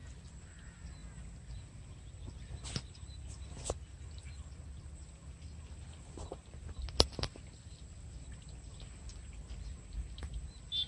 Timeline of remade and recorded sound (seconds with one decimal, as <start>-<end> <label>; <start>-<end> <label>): 0.0-10.9 recorded